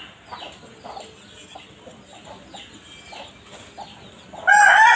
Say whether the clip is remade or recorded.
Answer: recorded